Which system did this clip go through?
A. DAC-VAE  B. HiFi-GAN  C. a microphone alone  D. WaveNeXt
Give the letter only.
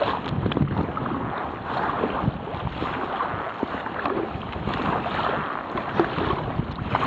C